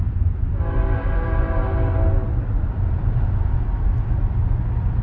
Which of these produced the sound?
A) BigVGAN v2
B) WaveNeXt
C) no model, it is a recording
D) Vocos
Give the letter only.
C